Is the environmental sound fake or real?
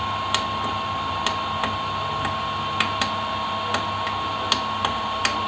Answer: real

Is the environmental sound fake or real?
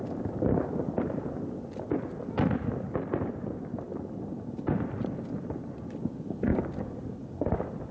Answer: real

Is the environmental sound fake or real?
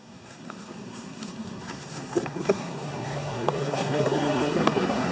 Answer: fake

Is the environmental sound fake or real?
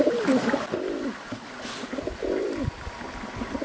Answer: real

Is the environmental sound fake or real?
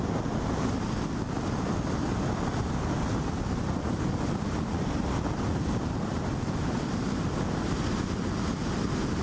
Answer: real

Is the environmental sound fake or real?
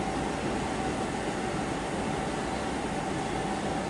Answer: real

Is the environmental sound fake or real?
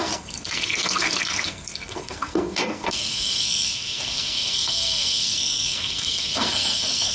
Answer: fake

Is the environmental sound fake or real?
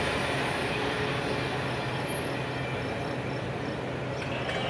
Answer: real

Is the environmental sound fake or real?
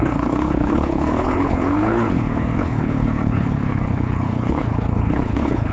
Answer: fake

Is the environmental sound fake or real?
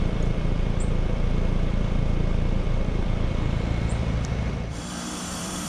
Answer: fake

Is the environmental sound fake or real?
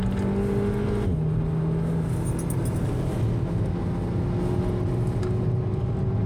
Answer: real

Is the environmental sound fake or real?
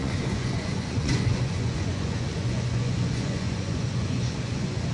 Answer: fake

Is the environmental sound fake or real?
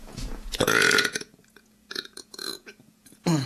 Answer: fake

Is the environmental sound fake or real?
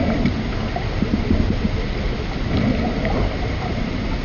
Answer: real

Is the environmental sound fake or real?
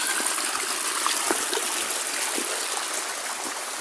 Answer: real